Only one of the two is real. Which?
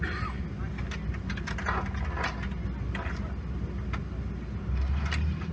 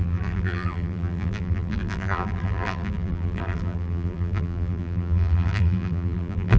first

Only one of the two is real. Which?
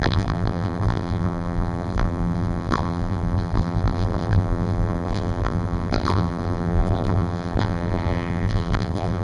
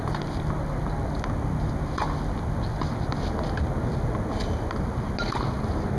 second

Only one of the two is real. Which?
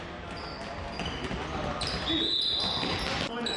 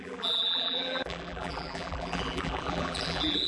first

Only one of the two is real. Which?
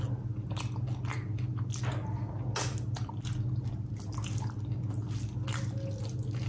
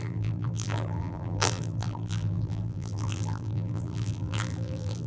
first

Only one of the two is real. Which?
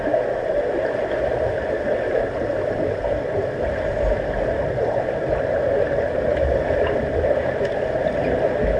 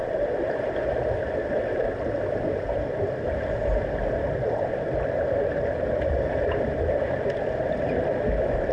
first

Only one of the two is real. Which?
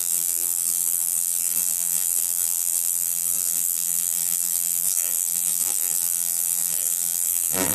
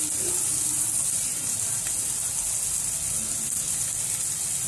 second